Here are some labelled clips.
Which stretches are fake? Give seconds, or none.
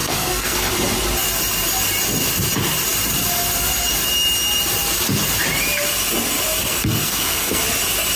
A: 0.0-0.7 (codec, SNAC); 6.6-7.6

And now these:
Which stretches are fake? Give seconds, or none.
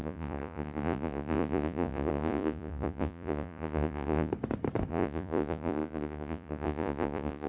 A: 0.0-4.3 (vocoder, Vocos); 4.9-7.5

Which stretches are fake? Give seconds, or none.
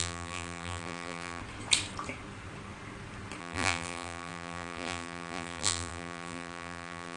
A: 0.0-1.4 (vocoder, BigVGAN v2); 3.4-7.2